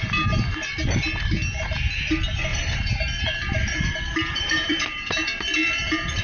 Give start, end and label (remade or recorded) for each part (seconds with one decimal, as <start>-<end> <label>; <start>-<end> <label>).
0.0-2.5 recorded; 2.5-6.2 remade